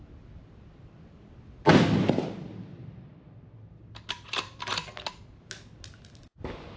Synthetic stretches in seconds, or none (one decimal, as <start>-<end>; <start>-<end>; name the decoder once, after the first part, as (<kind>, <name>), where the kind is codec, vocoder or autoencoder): none